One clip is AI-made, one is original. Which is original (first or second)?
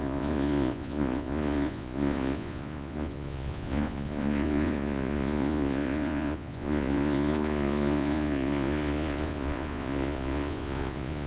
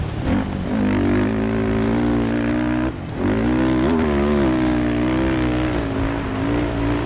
second